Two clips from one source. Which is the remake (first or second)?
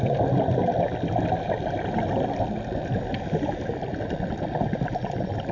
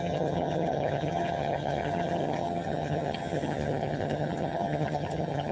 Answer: second